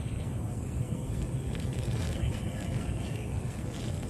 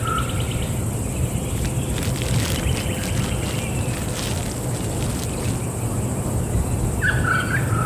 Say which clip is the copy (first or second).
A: first